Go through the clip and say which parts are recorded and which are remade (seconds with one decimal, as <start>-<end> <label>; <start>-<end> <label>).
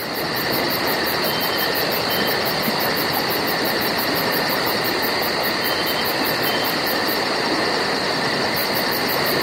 0.0-8.6 recorded; 8.6-9.4 remade